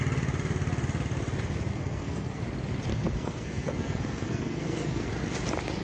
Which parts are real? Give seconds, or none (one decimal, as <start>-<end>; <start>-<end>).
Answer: 0.0-1.7; 2.4-2.9; 5.1-5.8